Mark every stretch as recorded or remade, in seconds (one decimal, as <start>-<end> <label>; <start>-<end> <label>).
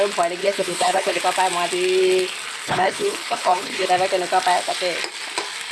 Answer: 0.0-0.4 recorded; 0.4-1.2 remade; 1.2-2.6 recorded; 2.6-3.9 remade; 3.9-5.7 recorded